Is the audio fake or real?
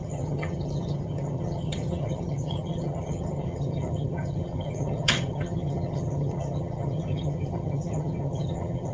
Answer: fake